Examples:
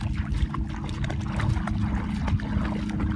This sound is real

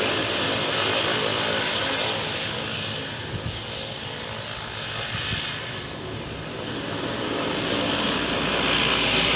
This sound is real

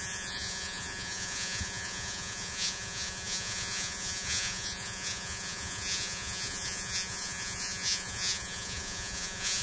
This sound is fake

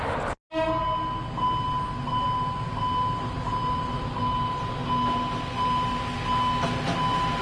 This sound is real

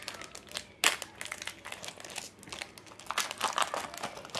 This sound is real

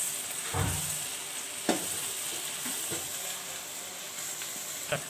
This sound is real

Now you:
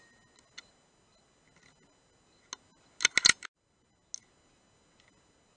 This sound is real